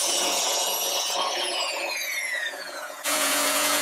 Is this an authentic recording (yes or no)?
no